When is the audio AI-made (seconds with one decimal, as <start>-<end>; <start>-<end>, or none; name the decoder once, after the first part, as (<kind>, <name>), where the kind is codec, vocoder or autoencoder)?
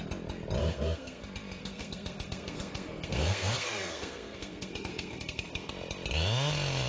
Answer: 0.6-1.2 (codec, SNAC); 1.6-5.7